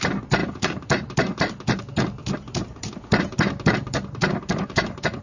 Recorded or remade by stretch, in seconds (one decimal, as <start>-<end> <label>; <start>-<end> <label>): 0.0-0.4 recorded; 0.4-1.4 remade; 1.4-2.2 recorded; 2.2-5.2 remade